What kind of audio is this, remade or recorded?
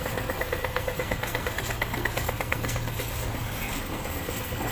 remade